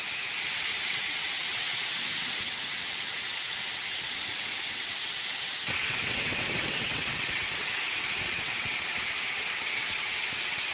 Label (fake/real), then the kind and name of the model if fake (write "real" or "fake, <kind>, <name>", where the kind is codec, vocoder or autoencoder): fake, vocoder, WaveNeXt